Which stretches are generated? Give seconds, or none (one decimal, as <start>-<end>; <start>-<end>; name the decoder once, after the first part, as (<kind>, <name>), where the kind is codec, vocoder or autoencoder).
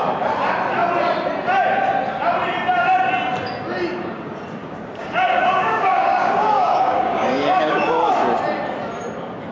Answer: 4.6-8.1 (codec, DAC)